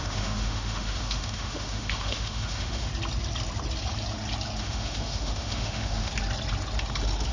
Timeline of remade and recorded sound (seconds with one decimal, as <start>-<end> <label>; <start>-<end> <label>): 0.0-2.9 remade; 2.9-4.6 recorded; 4.6-6.1 remade; 6.1-7.3 recorded